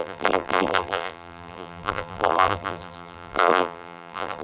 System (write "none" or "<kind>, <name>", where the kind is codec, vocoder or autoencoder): vocoder, BigVGAN v2